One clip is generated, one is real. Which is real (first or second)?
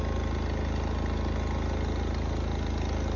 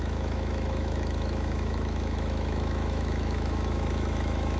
first